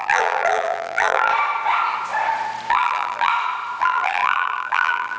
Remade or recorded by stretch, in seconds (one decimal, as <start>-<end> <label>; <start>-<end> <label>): 0.0-1.3 remade; 1.3-2.7 recorded; 2.7-3.3 remade; 3.3-3.8 recorded; 3.8-5.2 remade